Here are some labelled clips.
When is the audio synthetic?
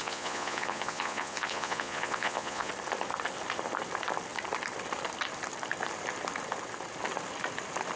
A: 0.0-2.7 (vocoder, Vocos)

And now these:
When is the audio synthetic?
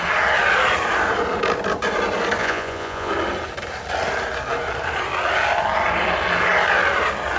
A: 2.4-3.1 (vocoder, Vocos)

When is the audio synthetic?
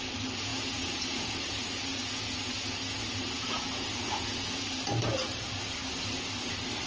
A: 0.5-4.6 (vocoder, Vocos)